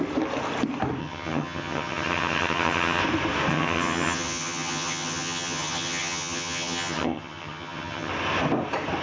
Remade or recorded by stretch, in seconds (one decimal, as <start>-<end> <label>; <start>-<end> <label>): 0.0-1.0 recorded; 1.0-3.0 remade; 3.0-3.5 recorded; 3.5-8.1 remade; 8.1-9.0 recorded